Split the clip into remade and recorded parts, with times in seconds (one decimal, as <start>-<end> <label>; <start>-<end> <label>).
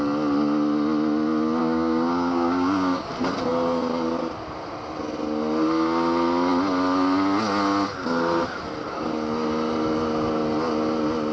0.0-1.6 recorded; 1.6-3.1 remade; 3.1-11.3 recorded